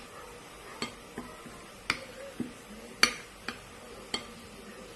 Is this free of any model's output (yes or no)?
yes